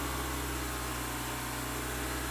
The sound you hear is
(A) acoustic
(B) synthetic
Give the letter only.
A